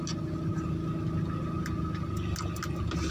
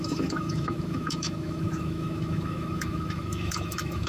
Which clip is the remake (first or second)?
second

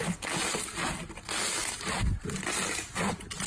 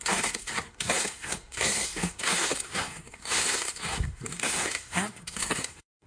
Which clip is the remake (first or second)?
second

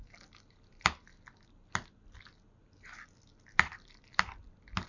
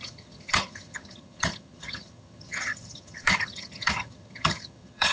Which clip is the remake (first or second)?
second